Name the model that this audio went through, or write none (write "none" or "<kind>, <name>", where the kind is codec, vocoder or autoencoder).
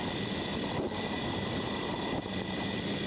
none